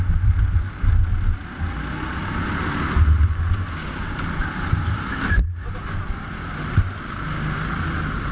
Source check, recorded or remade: recorded